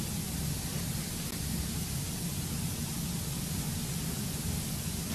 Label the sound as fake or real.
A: real